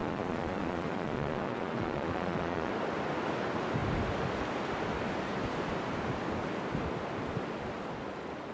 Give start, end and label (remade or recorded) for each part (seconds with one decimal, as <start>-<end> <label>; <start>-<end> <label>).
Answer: 0.0-2.7 remade; 2.7-8.5 recorded